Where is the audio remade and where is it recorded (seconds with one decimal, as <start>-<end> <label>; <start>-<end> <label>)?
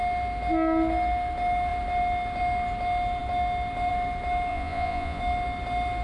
0.0-4.5 recorded; 4.5-5.2 remade; 5.2-6.0 recorded